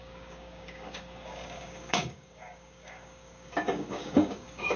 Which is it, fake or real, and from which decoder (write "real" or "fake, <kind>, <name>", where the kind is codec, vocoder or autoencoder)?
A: fake, codec, DAC